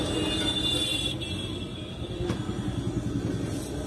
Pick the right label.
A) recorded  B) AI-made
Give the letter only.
A